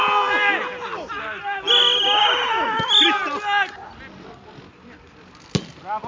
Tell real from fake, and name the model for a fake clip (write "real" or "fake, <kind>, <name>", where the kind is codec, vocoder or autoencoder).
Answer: real